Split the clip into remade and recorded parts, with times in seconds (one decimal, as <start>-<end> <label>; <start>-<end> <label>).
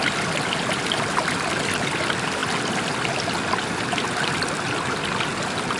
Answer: 0.0-5.8 recorded